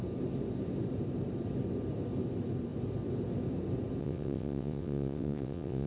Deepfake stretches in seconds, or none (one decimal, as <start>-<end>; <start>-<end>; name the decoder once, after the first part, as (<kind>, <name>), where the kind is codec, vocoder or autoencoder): 4.0-5.9 (vocoder, WaveNeXt)